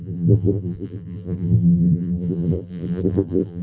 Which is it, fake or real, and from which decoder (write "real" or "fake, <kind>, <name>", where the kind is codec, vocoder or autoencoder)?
fake, vocoder, BigVGAN v2